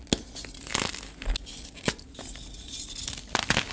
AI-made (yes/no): no